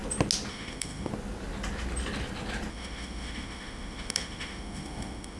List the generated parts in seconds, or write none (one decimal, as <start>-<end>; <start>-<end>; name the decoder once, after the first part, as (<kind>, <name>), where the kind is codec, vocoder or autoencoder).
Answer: 0.5-1.1 (autoencoder, DAC-VAE); 2.7-5.4